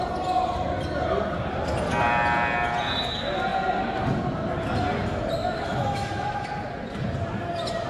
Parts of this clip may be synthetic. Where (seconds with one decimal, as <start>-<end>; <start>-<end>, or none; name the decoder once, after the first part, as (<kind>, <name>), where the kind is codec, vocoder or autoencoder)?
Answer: 5.4-6.5 (autoencoder, DAC-VAE)